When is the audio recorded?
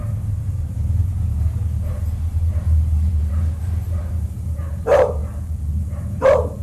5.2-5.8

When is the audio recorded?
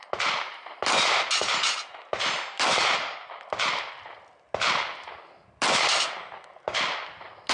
0.0-7.5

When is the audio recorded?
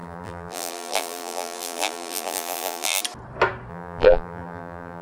3.0-3.7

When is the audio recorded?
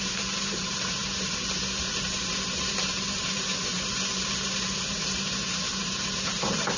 none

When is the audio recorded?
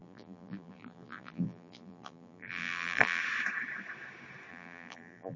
3.2-4.5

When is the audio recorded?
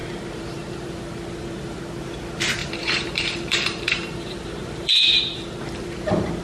1.8-2.6